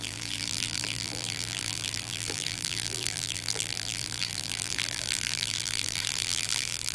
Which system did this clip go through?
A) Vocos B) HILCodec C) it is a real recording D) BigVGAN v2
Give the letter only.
D